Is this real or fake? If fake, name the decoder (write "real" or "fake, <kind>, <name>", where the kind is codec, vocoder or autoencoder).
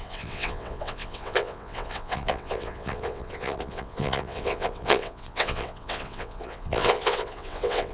fake, vocoder, WaveNeXt